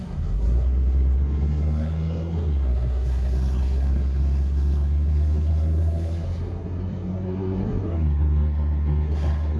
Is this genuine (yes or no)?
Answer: no